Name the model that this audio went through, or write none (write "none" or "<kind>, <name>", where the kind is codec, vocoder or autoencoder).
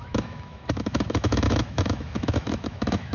autoencoder, DAC-VAE